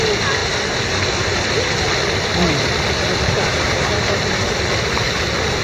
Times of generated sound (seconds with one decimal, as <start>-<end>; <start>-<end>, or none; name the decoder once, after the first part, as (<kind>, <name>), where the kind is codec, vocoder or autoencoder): 3.5-4.2 (vocoder, BigVGAN v2)